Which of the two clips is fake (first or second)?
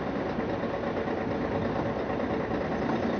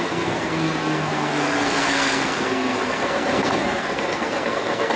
second